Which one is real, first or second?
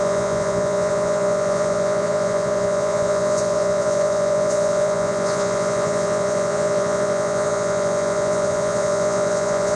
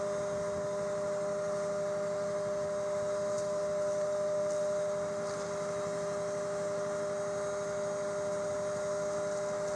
second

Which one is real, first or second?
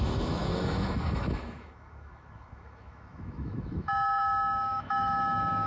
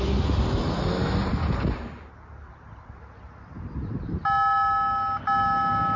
second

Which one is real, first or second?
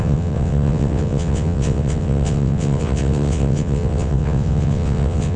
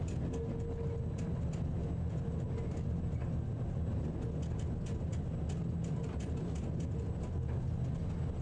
second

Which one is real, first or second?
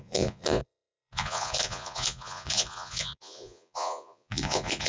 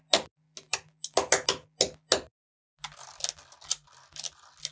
second